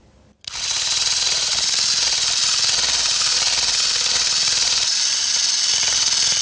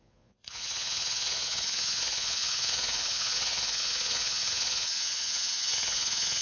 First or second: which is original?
first